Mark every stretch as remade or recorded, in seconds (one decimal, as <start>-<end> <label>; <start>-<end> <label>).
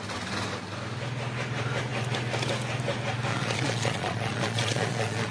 0.0-3.3 recorded; 3.3-5.3 remade